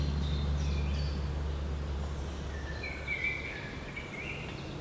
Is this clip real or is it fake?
real